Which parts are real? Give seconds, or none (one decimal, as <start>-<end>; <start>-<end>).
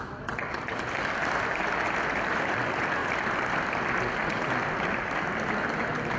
0.0-6.2